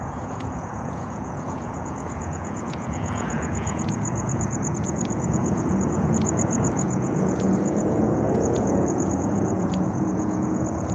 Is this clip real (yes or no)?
no